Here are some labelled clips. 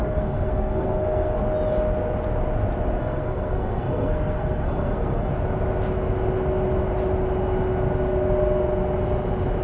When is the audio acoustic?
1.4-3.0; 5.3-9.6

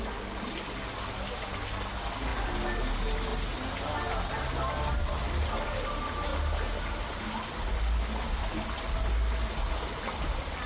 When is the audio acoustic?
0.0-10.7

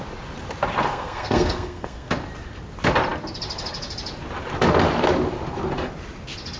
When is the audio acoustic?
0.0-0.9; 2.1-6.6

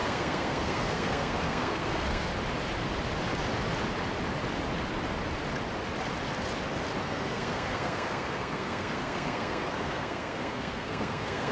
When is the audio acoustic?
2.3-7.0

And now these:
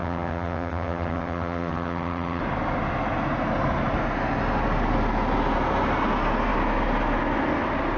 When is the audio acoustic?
2.4-8.0